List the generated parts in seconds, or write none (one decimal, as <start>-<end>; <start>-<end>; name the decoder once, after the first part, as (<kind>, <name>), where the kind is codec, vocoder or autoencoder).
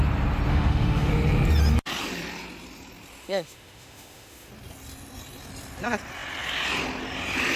0.5-1.1 (autoencoder, DAC-VAE); 3.2-4.5